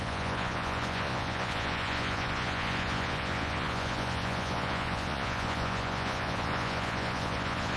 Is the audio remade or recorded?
remade